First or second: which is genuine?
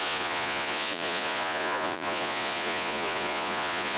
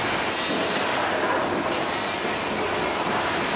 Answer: second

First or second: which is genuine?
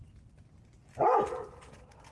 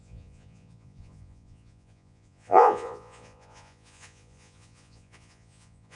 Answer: first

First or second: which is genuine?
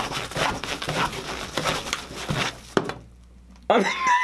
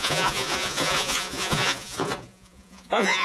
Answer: first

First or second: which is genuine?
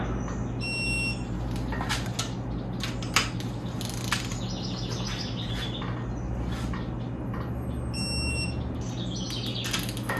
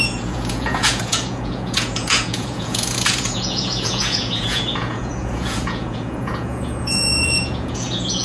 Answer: first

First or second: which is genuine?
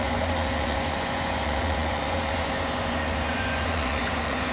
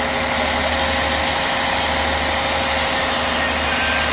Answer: second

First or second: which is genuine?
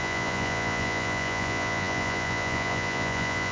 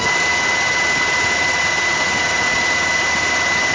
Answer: second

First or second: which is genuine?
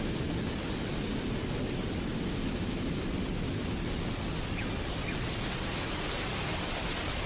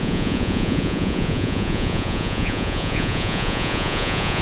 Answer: first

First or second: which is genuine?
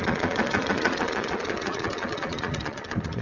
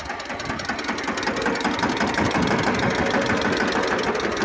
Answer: second